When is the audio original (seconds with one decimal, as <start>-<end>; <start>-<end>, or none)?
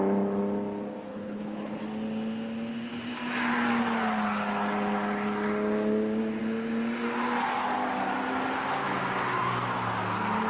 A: 0.0-1.1; 1.8-10.5